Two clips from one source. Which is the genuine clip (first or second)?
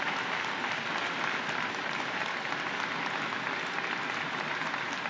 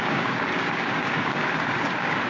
first